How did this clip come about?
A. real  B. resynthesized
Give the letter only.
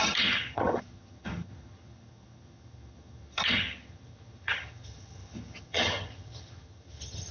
B